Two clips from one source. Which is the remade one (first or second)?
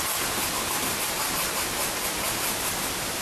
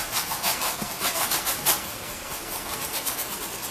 second